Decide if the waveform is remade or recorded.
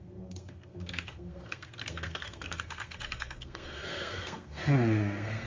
remade